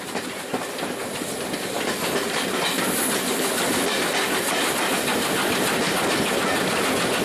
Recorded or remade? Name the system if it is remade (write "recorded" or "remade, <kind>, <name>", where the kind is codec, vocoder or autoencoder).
recorded